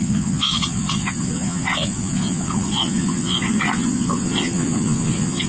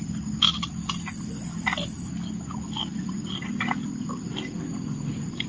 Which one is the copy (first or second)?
first